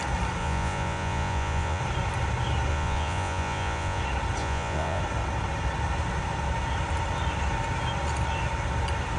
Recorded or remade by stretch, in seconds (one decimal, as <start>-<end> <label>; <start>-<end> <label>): 0.0-0.4 recorded; 0.4-1.8 remade; 1.8-2.7 recorded; 2.7-4.0 remade; 4.0-4.4 recorded; 4.4-5.0 remade; 5.0-9.2 recorded